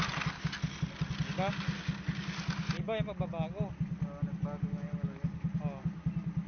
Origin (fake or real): real